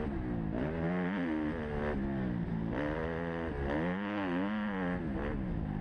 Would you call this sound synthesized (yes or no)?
no